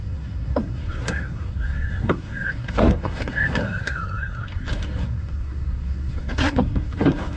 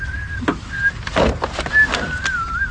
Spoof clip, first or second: first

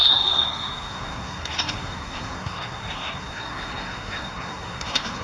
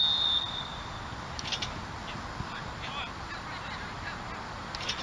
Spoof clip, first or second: first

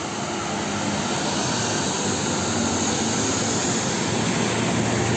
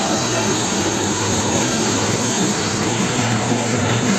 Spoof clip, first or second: second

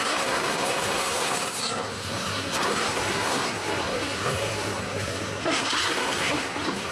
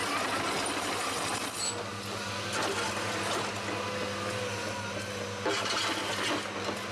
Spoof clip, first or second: first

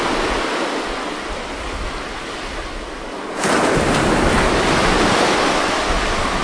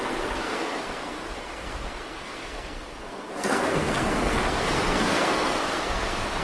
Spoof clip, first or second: second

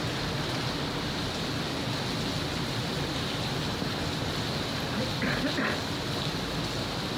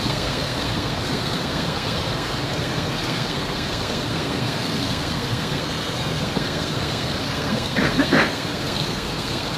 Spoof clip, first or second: second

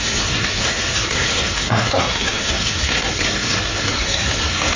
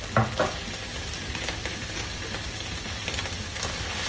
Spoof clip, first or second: first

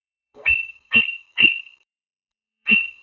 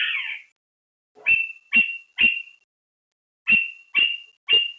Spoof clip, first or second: first